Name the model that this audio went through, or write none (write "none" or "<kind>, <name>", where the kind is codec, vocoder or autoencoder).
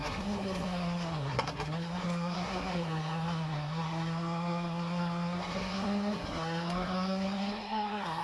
codec, SNAC